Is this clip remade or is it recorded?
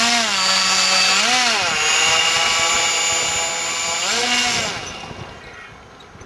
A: recorded